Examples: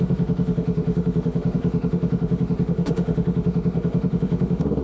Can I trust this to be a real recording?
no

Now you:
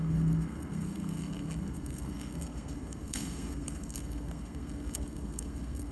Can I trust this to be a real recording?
no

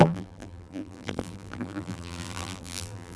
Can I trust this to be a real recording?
no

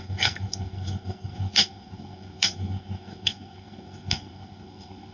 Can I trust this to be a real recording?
no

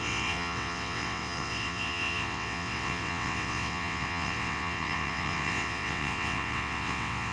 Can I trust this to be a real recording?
no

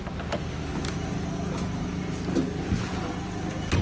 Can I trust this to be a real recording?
yes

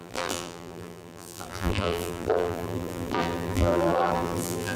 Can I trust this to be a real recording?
no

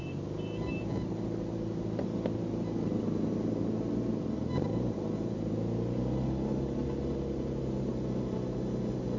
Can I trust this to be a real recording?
yes